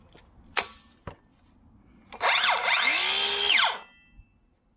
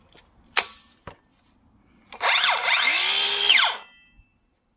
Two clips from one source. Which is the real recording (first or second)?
first